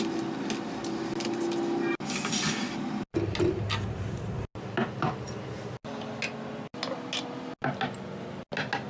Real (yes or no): yes